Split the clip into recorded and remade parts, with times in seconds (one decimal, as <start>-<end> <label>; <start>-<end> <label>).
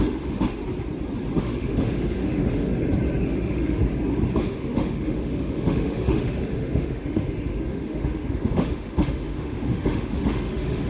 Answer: 0.0-0.6 remade; 0.6-1.4 recorded; 1.4-2.7 remade; 2.7-3.2 recorded; 3.2-3.8 remade; 3.8-4.4 recorded; 4.4-10.9 remade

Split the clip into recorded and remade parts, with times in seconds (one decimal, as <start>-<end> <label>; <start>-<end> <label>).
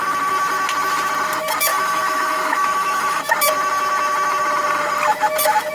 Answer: 0.0-1.7 recorded; 1.7-3.2 remade; 3.2-5.7 recorded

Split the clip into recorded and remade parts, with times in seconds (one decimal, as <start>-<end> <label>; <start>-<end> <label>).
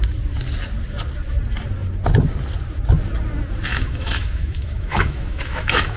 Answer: 0.0-3.7 recorded; 3.7-6.0 remade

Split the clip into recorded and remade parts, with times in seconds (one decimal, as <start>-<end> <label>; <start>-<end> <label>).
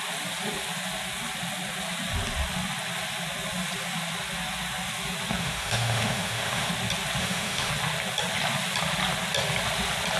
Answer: 0.0-5.4 recorded; 5.4-6.7 remade; 6.7-7.2 recorded; 7.2-7.7 remade; 7.7-10.2 recorded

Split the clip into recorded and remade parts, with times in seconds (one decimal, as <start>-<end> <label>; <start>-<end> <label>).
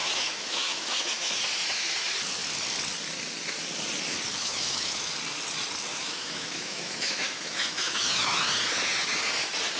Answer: 0.0-1.3 remade; 1.3-4.4 recorded; 4.4-5.1 remade; 5.1-5.9 recorded; 5.9-8.5 remade; 8.5-9.8 recorded